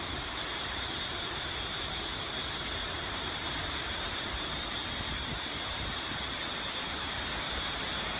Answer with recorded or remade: remade